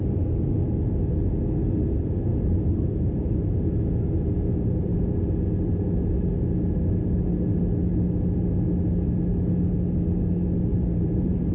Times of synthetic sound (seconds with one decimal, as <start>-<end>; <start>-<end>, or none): 2.3-3.6; 10.7-11.5